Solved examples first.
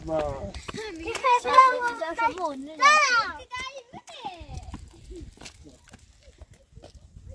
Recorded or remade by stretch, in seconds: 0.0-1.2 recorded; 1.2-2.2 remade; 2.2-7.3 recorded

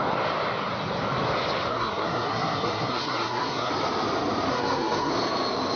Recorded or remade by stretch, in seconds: 0.0-1.7 recorded; 1.7-3.7 remade; 3.7-4.5 recorded; 4.5-5.1 remade; 5.1-5.8 recorded